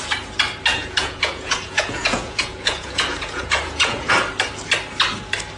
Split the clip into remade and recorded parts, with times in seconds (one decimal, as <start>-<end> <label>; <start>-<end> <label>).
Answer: 0.0-0.7 recorded; 0.7-4.1 remade; 4.1-5.6 recorded